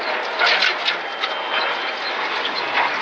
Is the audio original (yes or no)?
yes